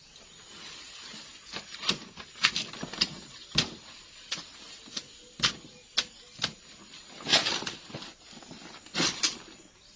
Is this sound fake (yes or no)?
no